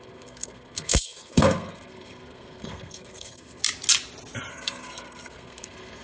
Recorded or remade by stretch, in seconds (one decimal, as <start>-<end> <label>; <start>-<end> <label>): 0.0-3.6 remade; 3.6-4.5 recorded; 4.5-6.0 remade